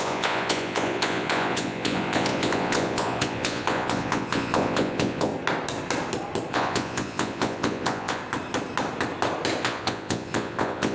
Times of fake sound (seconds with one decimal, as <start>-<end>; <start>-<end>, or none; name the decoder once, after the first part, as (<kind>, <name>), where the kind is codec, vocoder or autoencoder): 0.0-5.3 (vocoder, Vocos); 6.5-8.2; 9.6-10.9